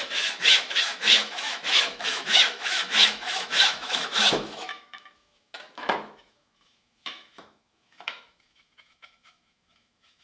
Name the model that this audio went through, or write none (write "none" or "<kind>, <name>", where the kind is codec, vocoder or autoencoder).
autoencoder, DAC-VAE